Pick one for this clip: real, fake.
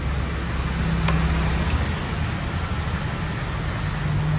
real